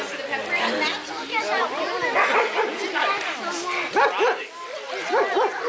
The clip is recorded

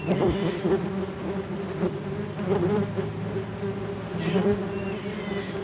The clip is recorded